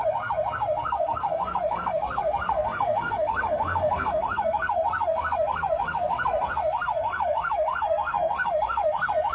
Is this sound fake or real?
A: fake